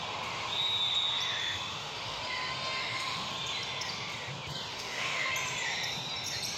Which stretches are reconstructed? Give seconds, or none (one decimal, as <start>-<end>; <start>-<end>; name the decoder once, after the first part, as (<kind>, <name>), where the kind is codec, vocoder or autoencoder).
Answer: 1.4-2.2 (autoencoder, DAC-VAE); 2.8-3.3; 4.7-5.3